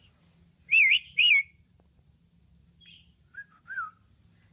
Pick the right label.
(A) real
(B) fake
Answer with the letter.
A